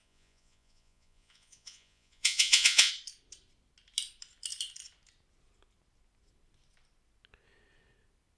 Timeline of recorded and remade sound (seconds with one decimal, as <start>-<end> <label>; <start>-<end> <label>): 0.0-2.9 remade; 2.9-8.4 recorded